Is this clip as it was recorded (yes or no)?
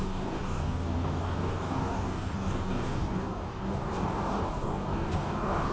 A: no